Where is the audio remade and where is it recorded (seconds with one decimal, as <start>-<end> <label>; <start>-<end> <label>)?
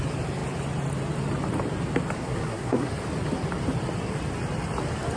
0.0-2.2 recorded; 2.2-2.9 remade; 2.9-5.2 recorded